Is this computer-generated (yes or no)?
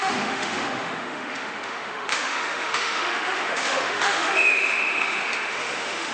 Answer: yes